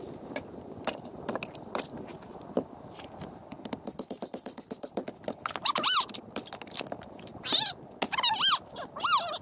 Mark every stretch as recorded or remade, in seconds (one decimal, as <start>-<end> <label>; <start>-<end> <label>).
0.0-9.4 recorded